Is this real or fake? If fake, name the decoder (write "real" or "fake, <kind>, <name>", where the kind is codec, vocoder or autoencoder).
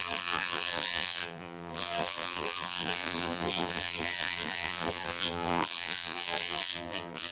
fake, vocoder, BigVGAN v2